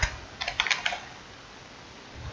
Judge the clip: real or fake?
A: real